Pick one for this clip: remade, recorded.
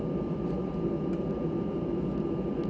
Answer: recorded